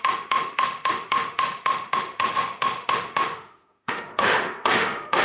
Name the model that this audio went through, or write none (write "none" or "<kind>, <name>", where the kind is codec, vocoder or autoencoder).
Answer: autoencoder, DAC-VAE